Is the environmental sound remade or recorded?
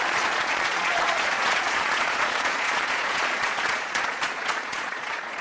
remade